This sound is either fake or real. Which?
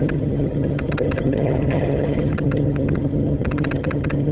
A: fake